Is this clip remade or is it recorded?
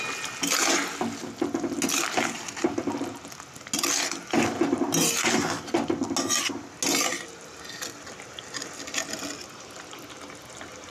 recorded